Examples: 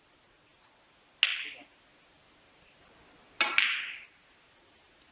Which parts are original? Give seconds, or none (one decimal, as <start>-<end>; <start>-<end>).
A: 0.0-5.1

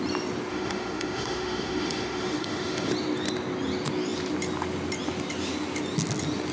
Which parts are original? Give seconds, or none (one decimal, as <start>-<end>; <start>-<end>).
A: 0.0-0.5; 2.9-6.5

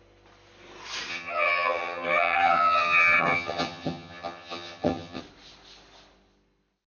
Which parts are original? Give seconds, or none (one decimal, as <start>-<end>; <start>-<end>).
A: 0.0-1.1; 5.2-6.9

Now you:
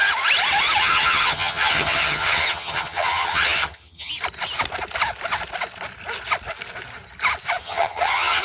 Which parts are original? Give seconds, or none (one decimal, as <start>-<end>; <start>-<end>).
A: 0.0-0.8; 4.1-7.6

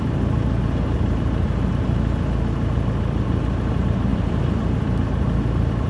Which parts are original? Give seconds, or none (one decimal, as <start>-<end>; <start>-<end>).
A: 0.0-4.1; 4.8-5.9

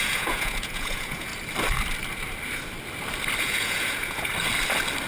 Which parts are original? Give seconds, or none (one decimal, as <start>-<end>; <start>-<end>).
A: 1.3-3.4; 4.3-5.1

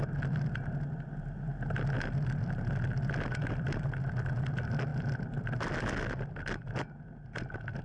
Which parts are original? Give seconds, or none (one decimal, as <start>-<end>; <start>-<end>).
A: 0.0-7.8